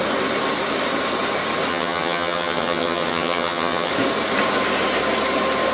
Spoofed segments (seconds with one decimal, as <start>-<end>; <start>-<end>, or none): 1.7-3.9